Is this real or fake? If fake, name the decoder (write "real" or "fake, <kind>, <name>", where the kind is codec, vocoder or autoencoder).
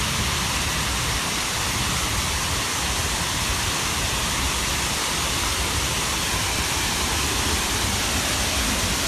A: real